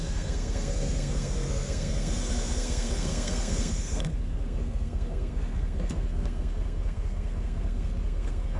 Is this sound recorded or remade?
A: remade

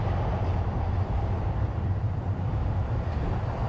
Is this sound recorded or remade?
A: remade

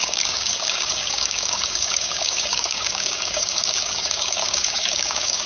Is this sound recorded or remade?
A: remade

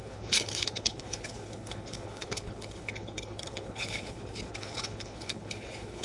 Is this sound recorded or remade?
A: remade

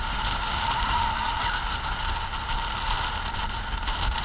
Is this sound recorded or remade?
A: recorded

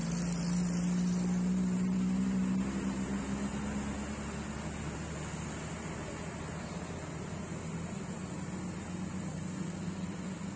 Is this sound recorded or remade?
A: recorded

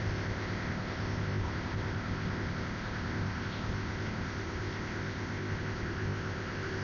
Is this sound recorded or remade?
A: remade